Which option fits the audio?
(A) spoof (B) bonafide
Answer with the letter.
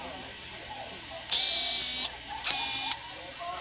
B